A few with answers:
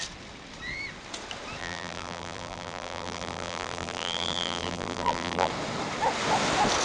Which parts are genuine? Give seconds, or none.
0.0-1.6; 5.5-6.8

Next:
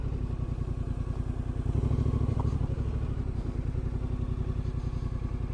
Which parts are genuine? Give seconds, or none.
0.0-2.3; 3.8-5.5